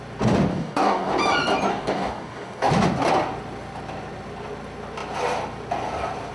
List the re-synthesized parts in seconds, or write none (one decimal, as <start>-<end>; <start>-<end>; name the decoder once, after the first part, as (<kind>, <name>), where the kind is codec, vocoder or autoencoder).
0.5-1.1 (codec, DAC); 1.7-2.7